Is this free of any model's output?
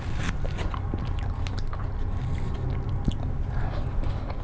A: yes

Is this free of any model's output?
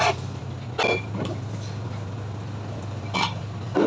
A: yes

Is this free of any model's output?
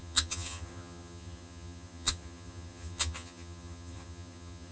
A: no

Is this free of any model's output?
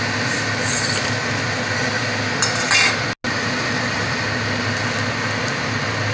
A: yes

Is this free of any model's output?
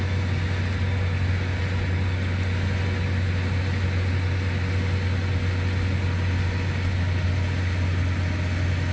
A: yes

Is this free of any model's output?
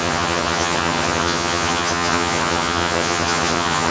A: no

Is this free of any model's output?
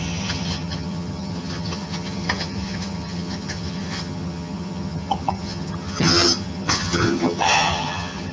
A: no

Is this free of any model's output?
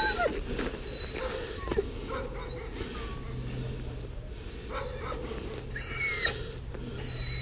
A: yes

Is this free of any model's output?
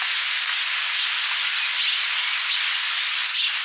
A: yes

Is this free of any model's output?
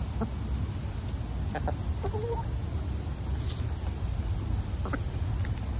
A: yes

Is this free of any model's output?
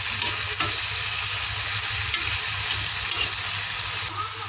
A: yes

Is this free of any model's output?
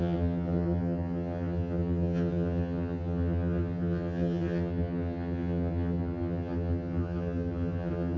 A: no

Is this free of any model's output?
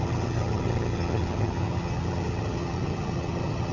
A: no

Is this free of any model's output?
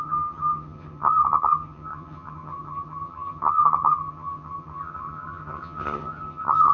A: no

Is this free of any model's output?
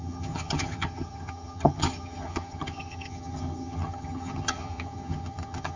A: no